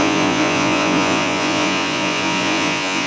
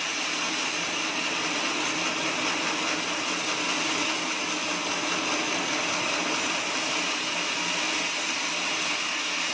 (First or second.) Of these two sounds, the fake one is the first